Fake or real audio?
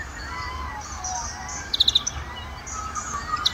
real